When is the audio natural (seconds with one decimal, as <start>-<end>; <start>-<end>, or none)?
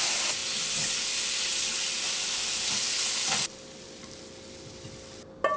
0.0-5.6